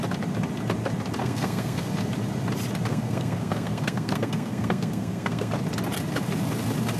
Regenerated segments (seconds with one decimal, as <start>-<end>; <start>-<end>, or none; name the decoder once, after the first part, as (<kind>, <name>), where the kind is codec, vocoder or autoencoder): 1.2-1.9 (codec, SNAC); 2.9-5.5

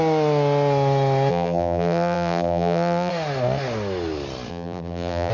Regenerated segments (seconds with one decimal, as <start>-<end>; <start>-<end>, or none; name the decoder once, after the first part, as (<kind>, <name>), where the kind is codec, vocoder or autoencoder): 1.3-3.1 (vocoder, BigVGAN v2); 4.5-5.3

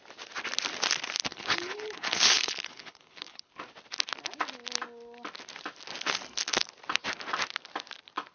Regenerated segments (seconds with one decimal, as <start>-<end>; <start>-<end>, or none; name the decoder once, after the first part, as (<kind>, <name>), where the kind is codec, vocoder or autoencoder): 1.3-3.5 (codec, HILCodec)

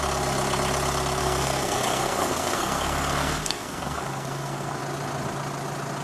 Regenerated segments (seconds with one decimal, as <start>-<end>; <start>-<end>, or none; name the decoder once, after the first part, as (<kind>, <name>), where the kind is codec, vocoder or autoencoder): 1.2-4.8 (codec, SNAC)

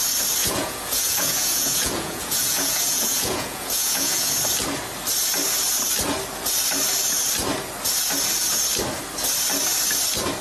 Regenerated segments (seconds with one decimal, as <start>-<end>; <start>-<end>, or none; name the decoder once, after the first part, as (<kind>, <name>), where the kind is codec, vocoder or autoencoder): 0.4-4.3 (vocoder, Vocos)

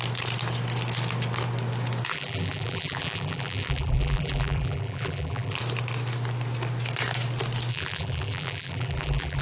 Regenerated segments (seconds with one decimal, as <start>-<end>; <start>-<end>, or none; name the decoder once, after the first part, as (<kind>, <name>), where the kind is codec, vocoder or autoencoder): 2.1-5.6 (vocoder, BigVGAN v2); 7.7-9.4

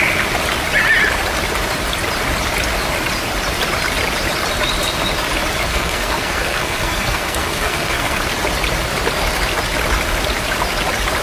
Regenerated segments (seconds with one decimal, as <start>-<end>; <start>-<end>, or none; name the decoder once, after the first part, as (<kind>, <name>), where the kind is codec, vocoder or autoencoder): 5.7-8.2 (codec, SNAC)

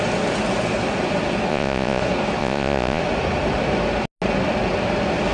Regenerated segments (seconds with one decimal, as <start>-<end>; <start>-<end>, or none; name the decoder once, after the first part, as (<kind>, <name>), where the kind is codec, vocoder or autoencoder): 1.5-2.0 (vocoder, Vocos); 2.4-3.0